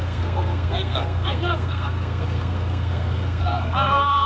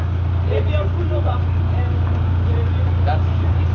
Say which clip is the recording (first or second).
second